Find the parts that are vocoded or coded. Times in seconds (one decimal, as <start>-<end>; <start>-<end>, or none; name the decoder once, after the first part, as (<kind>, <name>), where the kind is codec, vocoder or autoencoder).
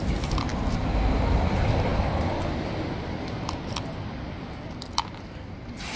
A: none